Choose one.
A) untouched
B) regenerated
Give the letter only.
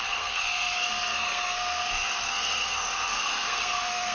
B